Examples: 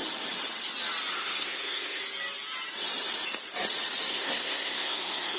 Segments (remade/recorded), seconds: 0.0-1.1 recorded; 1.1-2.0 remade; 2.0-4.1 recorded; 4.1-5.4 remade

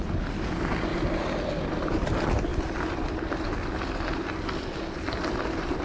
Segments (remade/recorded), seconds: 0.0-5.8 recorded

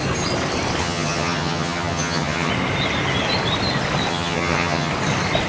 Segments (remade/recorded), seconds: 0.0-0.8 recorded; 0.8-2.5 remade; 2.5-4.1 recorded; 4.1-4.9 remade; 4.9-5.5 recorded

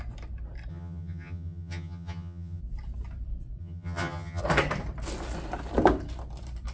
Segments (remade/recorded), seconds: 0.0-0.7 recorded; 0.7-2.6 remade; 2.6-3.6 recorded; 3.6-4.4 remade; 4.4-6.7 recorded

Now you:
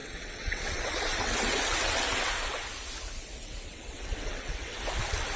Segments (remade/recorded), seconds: 0.0-2.3 remade; 2.3-3.4 recorded; 3.4-4.8 remade; 4.8-5.4 recorded

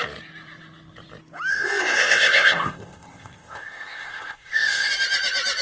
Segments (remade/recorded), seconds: 0.0-1.5 recorded; 1.5-4.9 remade; 4.9-5.6 recorded

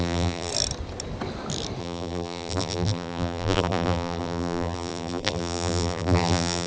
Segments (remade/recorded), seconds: 0.0-0.5 remade; 0.5-1.8 recorded; 1.8-6.7 remade

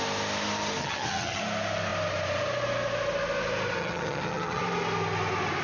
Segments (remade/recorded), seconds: 0.0-0.8 recorded; 0.8-1.4 remade; 1.4-3.8 recorded; 3.8-4.6 remade; 4.6-5.6 recorded